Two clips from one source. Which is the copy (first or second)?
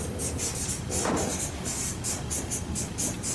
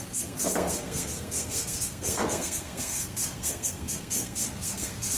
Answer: second